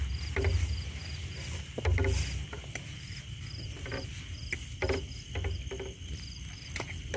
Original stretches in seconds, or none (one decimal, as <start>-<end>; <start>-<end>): 0.0-7.2